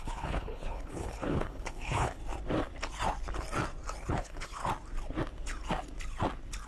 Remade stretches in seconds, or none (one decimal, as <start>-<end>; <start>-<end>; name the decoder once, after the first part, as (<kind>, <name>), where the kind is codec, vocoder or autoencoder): 0.0-2.2 (codec, HILCodec); 4.1-4.6

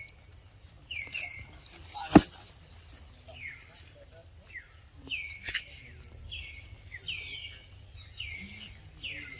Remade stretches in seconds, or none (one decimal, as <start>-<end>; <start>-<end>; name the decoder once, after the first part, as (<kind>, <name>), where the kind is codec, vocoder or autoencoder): none

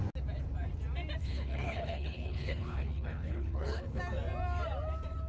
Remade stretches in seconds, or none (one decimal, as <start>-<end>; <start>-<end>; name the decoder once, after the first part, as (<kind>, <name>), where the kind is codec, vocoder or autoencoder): 1.2-4.0 (codec, HILCodec)

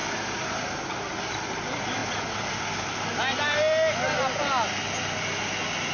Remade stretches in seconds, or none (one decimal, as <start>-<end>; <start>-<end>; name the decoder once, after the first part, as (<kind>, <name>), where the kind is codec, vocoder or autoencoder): none

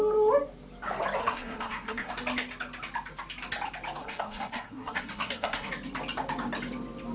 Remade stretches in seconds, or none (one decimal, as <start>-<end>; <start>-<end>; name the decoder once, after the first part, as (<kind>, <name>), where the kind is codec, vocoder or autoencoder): 1.2-2.1 (codec, SNAC); 4.0-5.7

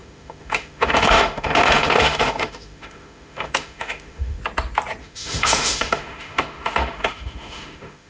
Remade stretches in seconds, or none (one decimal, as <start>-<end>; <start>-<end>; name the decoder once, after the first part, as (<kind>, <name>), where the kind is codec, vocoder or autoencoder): 0.0-4.4 (autoencoder, DAC-VAE); 5.0-8.1

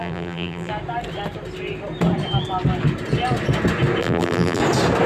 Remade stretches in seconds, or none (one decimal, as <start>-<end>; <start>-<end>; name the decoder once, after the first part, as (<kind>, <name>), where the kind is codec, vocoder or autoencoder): 0.0-0.7 (vocoder, BigVGAN v2); 4.0-4.6